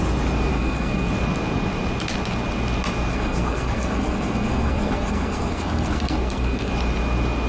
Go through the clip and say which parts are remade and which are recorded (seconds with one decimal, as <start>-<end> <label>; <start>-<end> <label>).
0.0-0.5 recorded; 0.5-1.1 remade; 1.1-3.1 recorded; 3.1-6.7 remade; 6.7-7.5 recorded